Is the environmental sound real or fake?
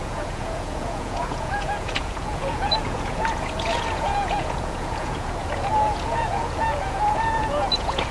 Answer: fake